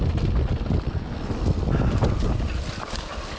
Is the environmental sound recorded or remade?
recorded